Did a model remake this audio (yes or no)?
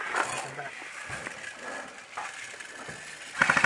no